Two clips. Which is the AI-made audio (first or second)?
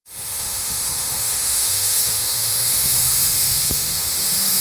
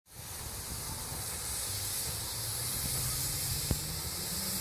first